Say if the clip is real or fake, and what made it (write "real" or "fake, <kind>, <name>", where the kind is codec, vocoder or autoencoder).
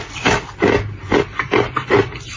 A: real